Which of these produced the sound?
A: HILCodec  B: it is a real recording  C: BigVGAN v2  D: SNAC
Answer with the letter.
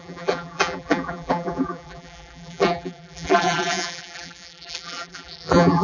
C